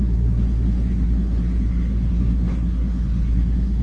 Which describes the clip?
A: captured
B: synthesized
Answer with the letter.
B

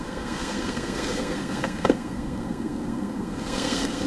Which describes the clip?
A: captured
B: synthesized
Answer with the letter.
B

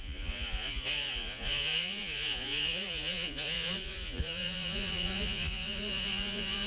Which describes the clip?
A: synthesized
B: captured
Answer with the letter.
A